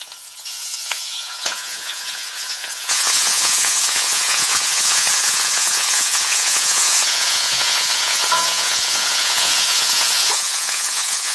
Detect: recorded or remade remade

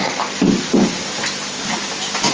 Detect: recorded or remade recorded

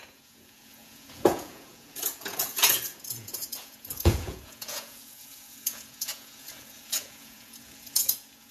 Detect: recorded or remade remade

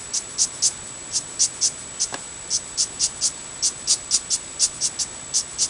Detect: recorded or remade recorded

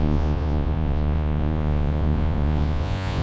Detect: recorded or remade remade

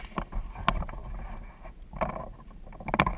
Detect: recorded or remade recorded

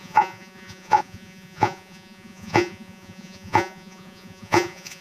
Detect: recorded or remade remade